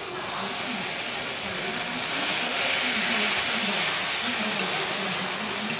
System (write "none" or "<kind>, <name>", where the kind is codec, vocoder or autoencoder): none